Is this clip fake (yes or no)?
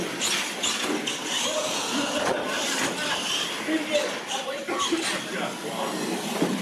no